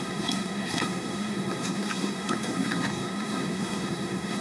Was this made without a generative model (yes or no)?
no